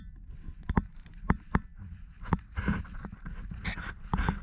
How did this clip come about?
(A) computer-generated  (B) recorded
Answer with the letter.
B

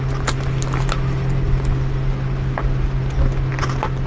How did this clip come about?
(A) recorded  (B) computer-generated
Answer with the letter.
A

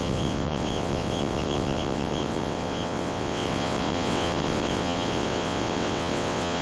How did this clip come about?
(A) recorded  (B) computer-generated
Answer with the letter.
B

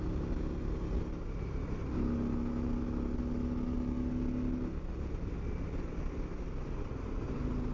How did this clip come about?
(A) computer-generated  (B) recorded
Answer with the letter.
B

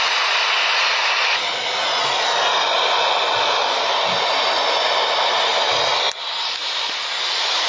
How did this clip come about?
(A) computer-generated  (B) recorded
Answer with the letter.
B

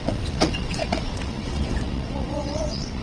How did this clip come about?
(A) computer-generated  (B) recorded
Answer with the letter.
A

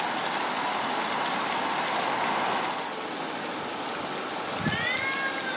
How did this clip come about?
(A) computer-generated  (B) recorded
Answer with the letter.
B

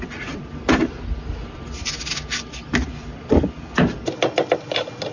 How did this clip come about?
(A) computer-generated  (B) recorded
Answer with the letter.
B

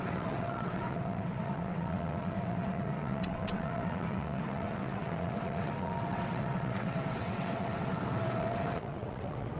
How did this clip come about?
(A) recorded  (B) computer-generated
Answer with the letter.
B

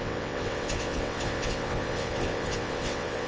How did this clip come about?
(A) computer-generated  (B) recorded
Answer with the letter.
A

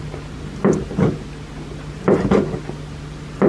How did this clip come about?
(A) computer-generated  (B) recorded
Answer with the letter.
B